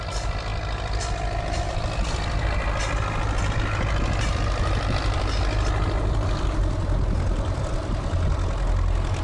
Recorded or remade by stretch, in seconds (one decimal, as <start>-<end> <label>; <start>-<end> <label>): 0.0-9.2 recorded